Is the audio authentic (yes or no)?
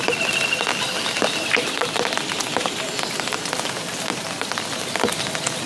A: yes